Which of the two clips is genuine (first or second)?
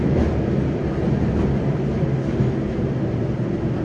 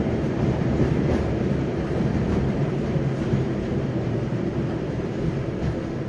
first